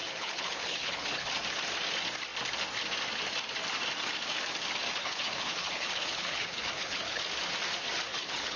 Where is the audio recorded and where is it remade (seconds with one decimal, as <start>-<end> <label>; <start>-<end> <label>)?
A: 0.0-1.3 remade; 1.3-5.0 recorded; 5.0-7.2 remade; 7.2-8.1 recorded; 8.1-8.6 remade